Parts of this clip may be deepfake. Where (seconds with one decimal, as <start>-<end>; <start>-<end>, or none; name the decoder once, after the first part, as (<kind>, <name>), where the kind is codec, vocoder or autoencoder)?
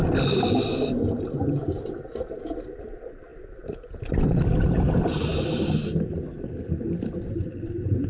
none